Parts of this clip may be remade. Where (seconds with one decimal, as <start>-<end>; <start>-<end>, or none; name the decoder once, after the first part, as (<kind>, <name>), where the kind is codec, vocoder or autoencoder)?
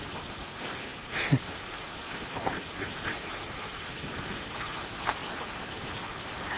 3.9-4.5 (vocoder, BigVGAN v2); 5.2-5.7